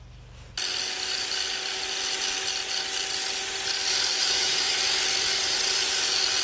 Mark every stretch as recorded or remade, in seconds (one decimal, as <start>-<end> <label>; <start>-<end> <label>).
0.0-4.1 recorded; 4.1-4.8 remade; 4.8-6.4 recorded